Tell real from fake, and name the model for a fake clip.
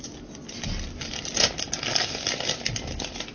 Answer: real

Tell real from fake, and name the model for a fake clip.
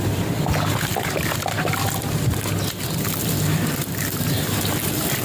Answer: real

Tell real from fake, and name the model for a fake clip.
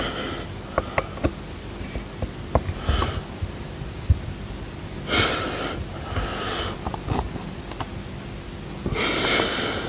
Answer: real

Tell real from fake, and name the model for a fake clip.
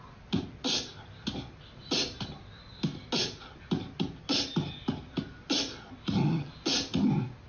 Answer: real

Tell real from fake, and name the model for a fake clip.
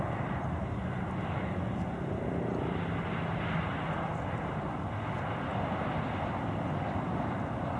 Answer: real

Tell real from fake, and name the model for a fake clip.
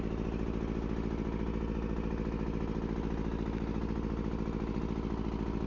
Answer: real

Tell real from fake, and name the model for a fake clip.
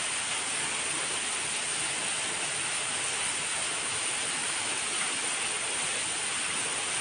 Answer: real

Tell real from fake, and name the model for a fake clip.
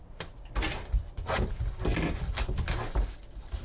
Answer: real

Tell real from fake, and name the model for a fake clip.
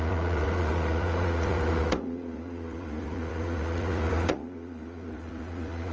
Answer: fake, vocoder, Vocos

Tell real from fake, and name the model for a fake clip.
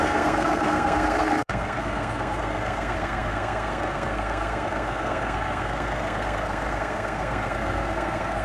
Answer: fake, codec, SNAC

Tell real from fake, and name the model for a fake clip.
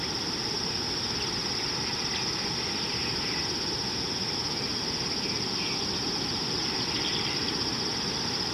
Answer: real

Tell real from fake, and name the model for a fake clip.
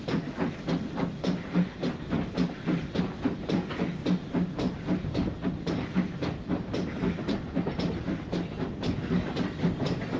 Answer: real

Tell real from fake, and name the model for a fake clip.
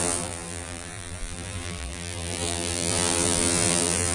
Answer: fake, vocoder, BigVGAN v2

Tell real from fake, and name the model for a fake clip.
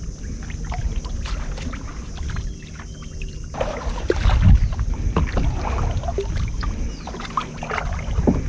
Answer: real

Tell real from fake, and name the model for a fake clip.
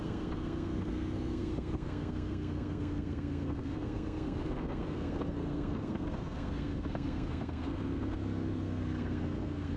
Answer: fake, codec, SNAC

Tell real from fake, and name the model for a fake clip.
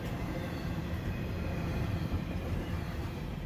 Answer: fake, vocoder, BigVGAN v2